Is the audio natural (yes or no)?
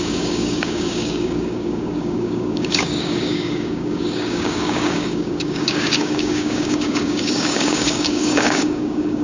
no